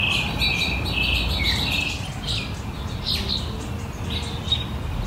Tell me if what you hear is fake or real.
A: real